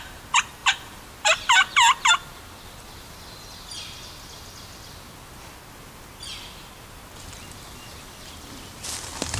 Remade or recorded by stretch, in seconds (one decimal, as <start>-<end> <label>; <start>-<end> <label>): 0.0-0.6 recorded; 0.6-2.1 remade; 2.1-9.4 recorded